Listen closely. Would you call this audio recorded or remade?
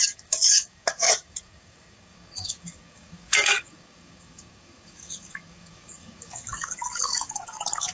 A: remade